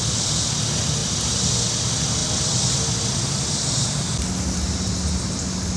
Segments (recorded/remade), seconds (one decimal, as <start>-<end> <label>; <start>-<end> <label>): 0.0-5.8 recorded